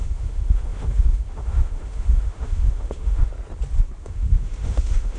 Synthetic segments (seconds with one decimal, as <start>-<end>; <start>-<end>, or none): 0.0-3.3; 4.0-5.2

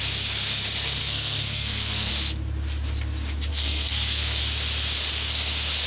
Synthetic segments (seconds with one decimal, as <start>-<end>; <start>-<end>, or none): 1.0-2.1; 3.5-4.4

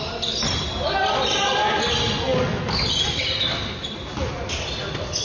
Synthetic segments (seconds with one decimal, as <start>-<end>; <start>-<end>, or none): none

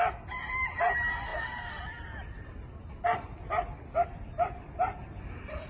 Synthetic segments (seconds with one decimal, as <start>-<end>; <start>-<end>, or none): none

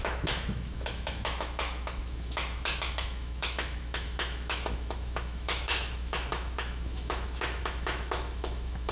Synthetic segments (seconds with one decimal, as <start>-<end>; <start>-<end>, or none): 0.0-8.9

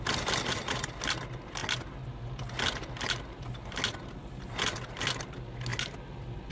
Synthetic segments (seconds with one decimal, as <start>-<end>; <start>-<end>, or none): none

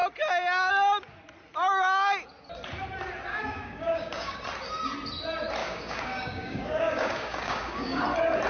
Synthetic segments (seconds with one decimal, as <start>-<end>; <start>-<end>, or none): 3.3-4.4; 5.6-8.0

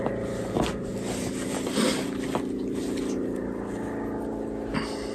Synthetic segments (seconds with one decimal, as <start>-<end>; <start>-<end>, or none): none